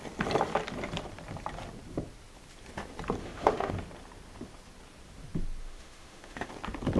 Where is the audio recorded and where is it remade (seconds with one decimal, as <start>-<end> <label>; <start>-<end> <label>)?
0.0-3.2 recorded; 3.2-3.7 remade; 3.7-5.6 recorded; 5.6-6.5 remade; 6.5-7.0 recorded